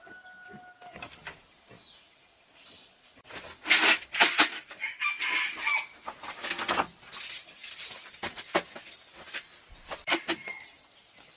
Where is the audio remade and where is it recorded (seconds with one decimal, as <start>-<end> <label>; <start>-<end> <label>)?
0.0-11.4 recorded